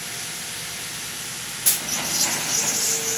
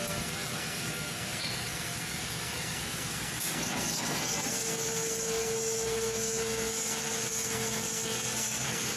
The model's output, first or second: second